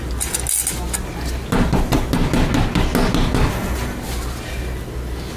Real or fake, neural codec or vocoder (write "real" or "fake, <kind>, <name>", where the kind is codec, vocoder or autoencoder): real